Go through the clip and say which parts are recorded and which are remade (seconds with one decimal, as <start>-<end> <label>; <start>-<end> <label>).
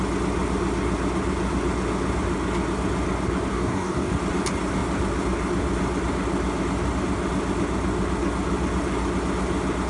0.0-3.5 recorded; 3.5-4.1 remade; 4.1-9.9 recorded